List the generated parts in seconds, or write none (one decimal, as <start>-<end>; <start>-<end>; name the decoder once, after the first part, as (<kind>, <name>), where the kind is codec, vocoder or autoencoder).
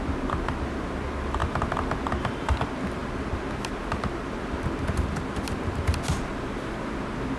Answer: none